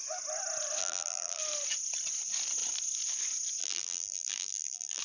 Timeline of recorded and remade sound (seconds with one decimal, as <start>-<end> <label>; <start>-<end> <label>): 0.0-0.8 recorded; 0.8-1.4 remade; 1.4-3.6 recorded; 3.6-5.0 remade